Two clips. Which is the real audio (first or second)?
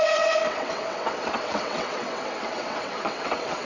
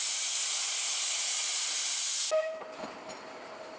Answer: second